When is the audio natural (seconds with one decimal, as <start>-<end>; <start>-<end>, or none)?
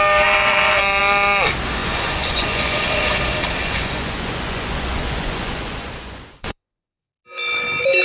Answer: 0.0-1.8; 3.2-3.6; 7.1-8.0